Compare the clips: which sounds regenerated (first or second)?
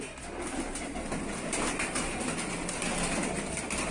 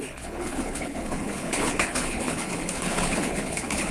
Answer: second